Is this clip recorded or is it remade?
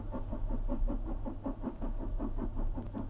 recorded